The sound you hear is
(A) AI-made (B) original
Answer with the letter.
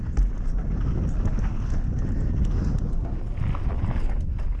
B